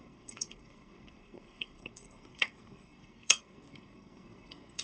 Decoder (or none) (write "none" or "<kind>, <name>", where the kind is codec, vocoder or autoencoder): codec, SNAC